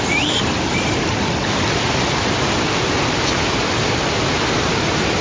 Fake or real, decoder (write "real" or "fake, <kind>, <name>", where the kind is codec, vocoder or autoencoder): real